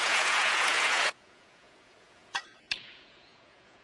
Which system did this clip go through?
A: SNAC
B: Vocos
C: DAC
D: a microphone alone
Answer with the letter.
B